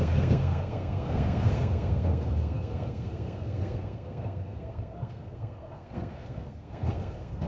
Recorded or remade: remade